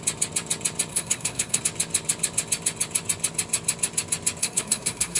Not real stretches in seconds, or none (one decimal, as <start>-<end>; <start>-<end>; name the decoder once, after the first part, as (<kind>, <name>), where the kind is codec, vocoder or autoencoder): 0.9-1.6 (codec, SNAC); 4.4-5.2